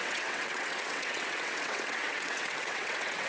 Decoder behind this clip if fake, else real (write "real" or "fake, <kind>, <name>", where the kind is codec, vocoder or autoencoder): fake, vocoder, WaveNeXt